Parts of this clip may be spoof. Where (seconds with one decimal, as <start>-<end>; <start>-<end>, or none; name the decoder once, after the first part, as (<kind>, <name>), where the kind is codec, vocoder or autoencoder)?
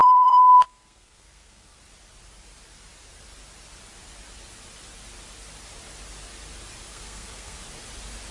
0.0-1.8 (codec, SNAC); 6.9-7.6